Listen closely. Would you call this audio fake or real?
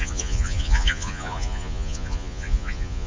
fake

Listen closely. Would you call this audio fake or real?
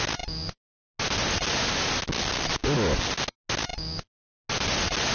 real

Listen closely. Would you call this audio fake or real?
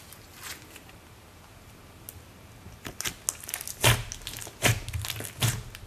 real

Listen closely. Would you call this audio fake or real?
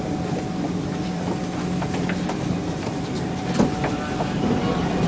real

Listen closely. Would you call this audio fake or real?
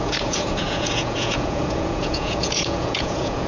fake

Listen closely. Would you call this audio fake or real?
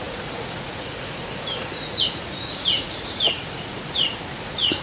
fake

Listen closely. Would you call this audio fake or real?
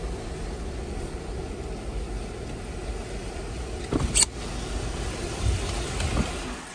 real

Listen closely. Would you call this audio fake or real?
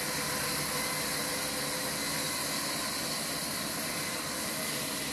real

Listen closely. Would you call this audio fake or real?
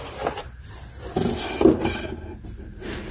real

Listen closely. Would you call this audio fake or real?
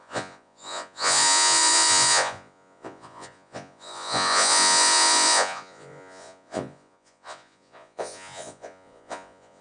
fake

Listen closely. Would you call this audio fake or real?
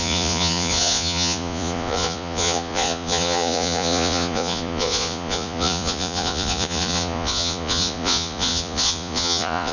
fake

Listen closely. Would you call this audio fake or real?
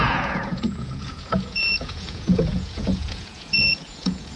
fake